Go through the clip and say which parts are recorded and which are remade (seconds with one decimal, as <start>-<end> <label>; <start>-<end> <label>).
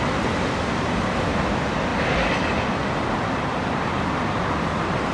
0.0-5.1 remade